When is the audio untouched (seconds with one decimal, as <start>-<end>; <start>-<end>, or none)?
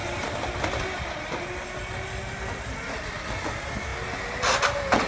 0.0-5.1